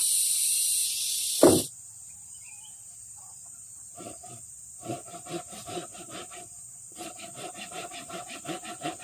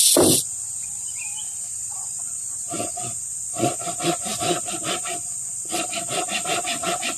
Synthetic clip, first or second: first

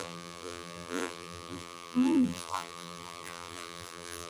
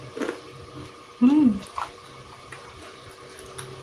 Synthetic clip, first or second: first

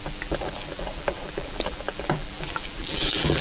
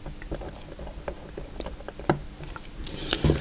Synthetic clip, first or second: first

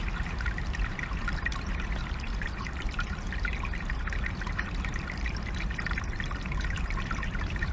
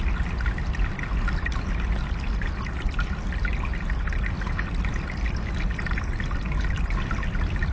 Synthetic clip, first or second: first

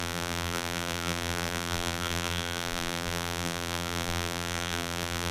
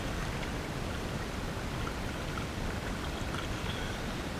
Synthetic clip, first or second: first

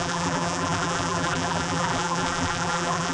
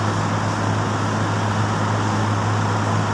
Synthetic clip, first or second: first